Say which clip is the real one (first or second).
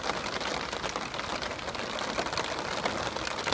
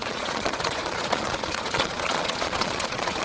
first